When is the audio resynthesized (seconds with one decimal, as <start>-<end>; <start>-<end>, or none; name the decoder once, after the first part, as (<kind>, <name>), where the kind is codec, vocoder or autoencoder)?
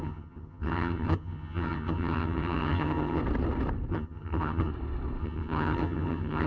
0.0-3.2 (vocoder, HiFi-GAN); 3.9-4.7; 5.2-6.5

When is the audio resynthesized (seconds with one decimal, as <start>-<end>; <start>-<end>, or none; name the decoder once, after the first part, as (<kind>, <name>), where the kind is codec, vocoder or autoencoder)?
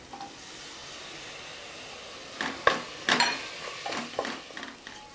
none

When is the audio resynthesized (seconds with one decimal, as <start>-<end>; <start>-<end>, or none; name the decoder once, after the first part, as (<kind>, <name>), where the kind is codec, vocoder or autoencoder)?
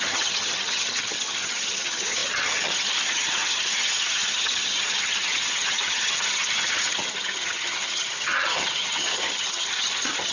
0.0-10.3 (vocoder, HiFi-GAN)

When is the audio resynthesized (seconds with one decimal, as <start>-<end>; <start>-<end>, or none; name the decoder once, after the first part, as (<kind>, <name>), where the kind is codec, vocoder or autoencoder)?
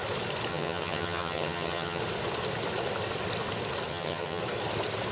0.5-2.0 (vocoder, HiFi-GAN); 3.9-4.4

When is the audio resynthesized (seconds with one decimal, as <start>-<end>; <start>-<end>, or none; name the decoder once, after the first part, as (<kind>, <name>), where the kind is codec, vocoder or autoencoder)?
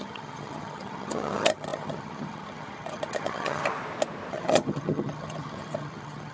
0.0-3.6 (vocoder, HiFi-GAN); 4.3-6.3